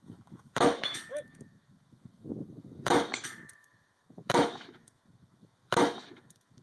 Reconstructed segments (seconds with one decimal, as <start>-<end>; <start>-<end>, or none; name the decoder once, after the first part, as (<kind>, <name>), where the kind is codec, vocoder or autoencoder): 0.0-6.6 (autoencoder, DAC-VAE)